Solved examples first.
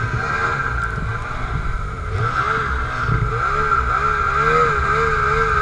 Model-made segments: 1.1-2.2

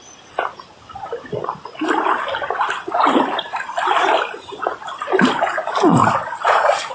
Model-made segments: 0.0-6.0

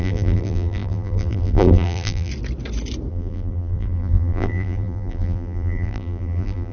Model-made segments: 0.0-2.3; 3.1-6.7

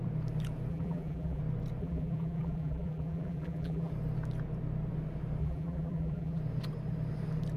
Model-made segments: 0.7-1.4; 1.8-3.9; 5.4-6.4

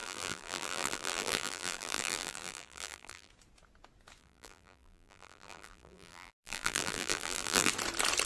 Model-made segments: 0.0-3.3; 4.2-7.7

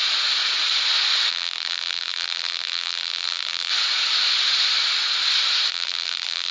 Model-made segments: 1.3-3.7; 5.7-6.5

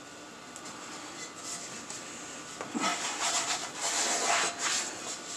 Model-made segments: none

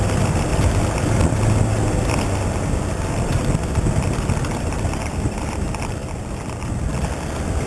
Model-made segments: 6.0-7.0